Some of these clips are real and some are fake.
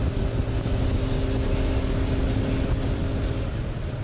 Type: real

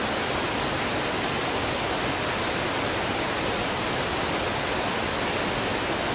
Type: real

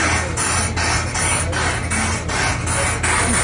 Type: real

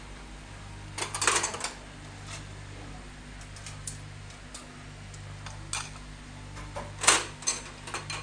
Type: real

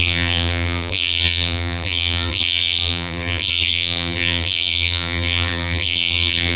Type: fake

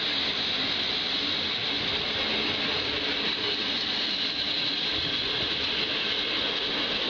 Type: real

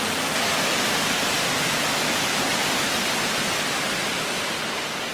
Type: real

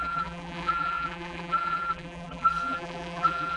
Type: fake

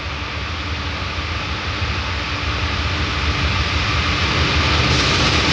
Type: real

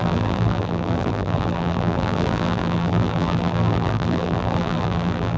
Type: fake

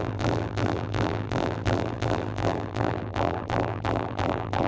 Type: fake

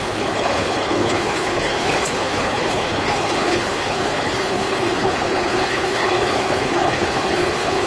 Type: fake